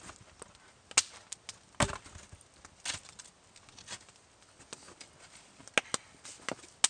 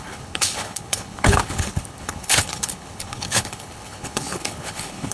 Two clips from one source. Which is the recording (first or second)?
first